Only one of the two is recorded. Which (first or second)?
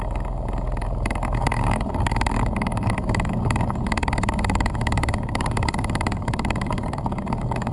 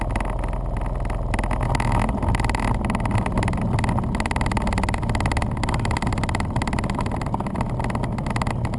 second